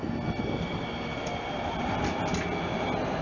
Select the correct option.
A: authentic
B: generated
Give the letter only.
A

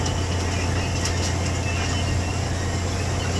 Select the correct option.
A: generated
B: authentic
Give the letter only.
B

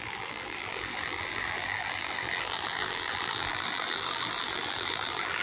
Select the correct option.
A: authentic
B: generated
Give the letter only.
B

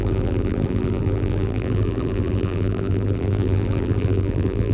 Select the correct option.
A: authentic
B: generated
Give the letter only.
B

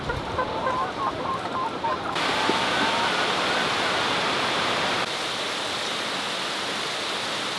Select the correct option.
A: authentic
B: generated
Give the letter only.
B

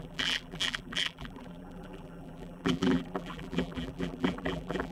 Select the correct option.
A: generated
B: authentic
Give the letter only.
A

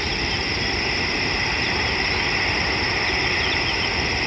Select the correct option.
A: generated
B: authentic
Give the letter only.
A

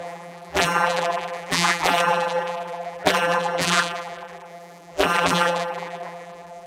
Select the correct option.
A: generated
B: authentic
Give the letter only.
A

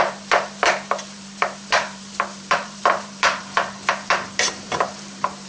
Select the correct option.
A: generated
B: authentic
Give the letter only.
A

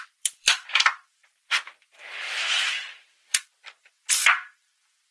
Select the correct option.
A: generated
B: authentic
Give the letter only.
A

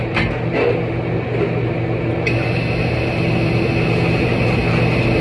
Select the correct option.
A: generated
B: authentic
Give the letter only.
B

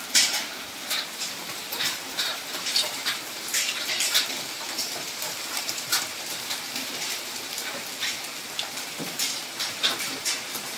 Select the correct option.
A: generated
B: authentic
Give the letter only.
A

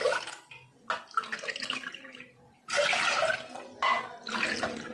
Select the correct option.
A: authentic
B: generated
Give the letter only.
A